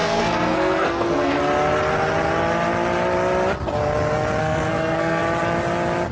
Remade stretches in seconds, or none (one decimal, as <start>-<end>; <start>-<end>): 0.0-1.4; 4.4-5.2